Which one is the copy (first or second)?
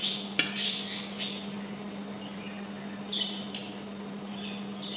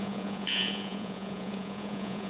second